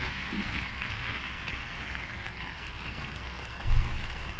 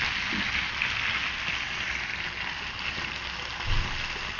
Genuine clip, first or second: second